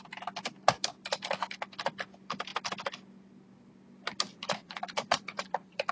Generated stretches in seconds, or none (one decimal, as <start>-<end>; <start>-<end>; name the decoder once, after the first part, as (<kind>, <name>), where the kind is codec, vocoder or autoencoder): 4.3-5.9 (vocoder, Vocos)